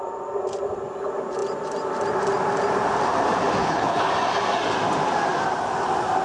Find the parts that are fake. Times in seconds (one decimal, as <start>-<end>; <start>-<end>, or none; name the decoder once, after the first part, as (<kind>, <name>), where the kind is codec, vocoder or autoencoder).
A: 3.6-4.1 (codec, HILCodec)